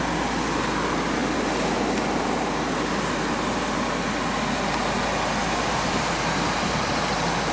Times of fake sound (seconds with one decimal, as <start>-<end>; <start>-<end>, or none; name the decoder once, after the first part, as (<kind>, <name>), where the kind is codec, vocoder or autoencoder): 5.4-6.8 (vocoder, BigVGAN v2)